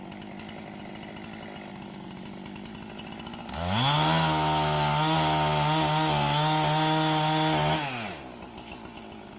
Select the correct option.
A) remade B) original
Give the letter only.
B